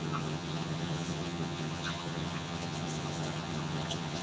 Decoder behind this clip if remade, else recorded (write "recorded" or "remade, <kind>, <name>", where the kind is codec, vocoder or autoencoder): remade, vocoder, HiFi-GAN